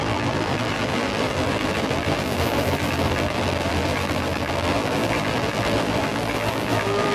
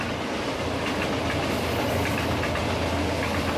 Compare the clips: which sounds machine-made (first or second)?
first